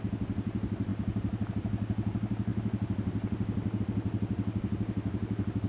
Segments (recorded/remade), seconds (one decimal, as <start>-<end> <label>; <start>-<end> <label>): 0.0-5.7 recorded